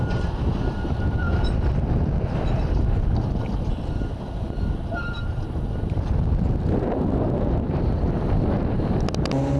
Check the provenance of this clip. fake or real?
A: real